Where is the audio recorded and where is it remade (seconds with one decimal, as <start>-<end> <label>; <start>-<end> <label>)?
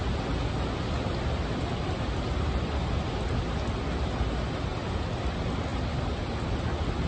0.0-7.1 recorded